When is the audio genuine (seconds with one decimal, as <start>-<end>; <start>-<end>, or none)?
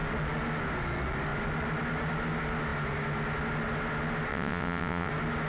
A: 0.0-4.3; 5.1-5.5